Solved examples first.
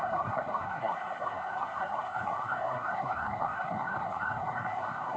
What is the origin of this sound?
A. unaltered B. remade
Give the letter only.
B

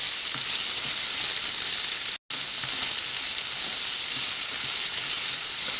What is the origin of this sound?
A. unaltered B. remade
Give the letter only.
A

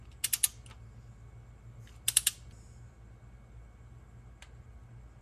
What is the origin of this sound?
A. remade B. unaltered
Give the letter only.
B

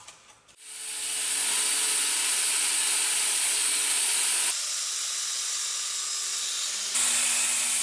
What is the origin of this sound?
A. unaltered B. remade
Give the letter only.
A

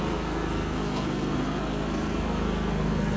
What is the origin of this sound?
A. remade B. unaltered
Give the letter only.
A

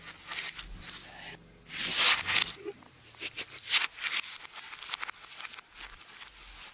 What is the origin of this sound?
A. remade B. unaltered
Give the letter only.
B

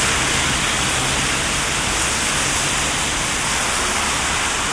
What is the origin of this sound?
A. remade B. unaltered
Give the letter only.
B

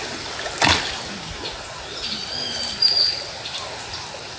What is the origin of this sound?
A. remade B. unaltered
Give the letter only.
B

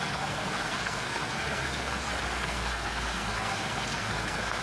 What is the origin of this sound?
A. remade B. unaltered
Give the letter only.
A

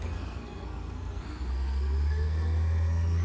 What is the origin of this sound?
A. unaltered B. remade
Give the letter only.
B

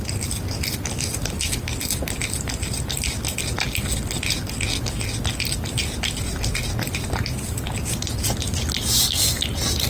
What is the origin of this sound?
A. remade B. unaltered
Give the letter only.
B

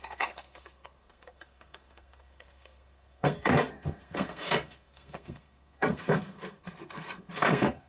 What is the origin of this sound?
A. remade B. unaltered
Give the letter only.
A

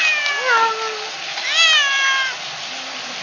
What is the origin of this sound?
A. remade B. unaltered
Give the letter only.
B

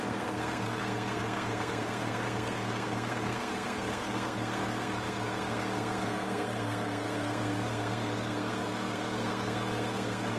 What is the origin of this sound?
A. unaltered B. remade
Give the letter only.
B